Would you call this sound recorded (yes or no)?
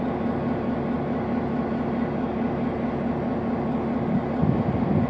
yes